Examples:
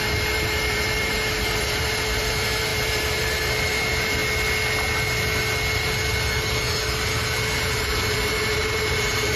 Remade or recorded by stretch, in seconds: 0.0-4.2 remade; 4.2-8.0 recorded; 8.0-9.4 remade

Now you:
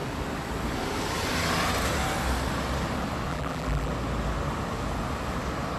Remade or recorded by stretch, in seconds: 0.0-3.3 recorded; 3.3-3.9 remade; 3.9-5.8 recorded

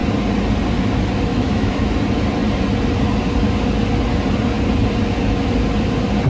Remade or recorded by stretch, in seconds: 0.0-1.3 recorded; 1.3-1.8 remade; 1.8-6.3 recorded

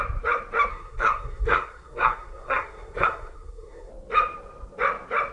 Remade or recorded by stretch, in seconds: 0.0-0.7 recorded; 0.7-3.9 remade; 3.9-5.3 recorded